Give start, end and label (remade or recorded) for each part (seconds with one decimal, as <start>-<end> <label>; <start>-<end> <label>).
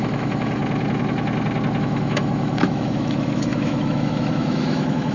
0.0-0.6 remade; 0.6-1.8 recorded; 1.8-5.1 remade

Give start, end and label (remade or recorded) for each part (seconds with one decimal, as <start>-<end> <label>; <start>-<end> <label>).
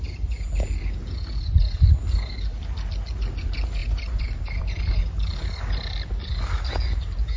0.0-7.4 recorded